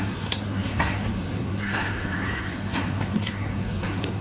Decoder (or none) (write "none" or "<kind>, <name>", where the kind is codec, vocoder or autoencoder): codec, SNAC